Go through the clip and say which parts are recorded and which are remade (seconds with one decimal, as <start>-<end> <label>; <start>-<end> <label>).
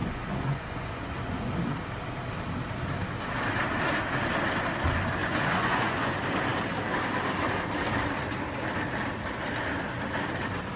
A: 0.0-1.5 remade; 1.5-5.2 recorded; 5.2-6.1 remade; 6.1-10.8 recorded